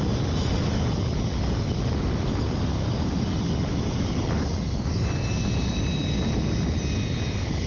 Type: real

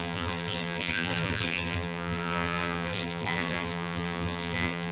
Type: fake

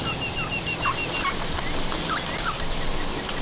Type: real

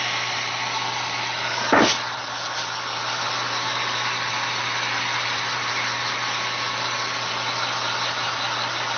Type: real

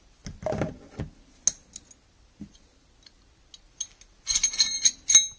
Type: real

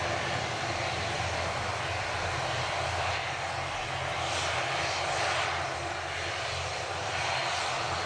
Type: real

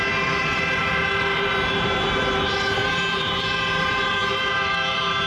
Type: fake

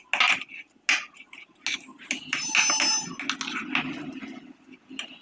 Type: real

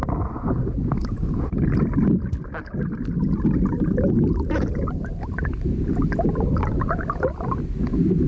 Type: real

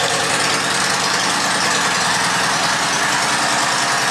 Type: real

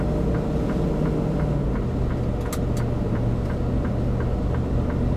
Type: real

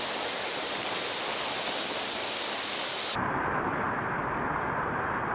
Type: real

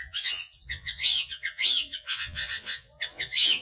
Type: fake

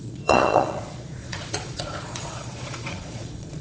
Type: fake